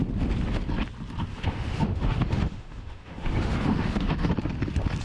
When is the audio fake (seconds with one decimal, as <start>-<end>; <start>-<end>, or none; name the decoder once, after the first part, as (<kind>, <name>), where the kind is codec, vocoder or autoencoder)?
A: 1.3-4.3 (autoencoder, DAC-VAE)